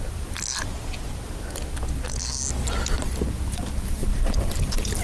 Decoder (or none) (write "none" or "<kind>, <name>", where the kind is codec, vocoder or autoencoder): none